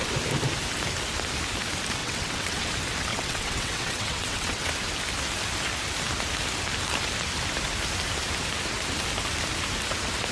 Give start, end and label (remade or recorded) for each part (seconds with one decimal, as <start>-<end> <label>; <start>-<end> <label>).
0.0-2.0 recorded; 2.0-2.7 remade; 2.7-3.1 recorded; 3.1-4.7 remade; 4.7-10.3 recorded